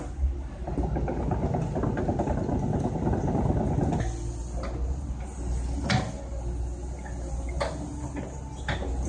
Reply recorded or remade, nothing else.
recorded